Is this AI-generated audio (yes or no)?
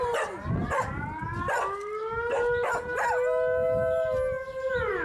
no